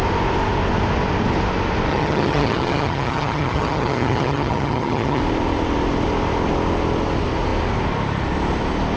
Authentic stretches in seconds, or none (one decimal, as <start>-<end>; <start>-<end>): 0.0-1.9; 5.2-9.0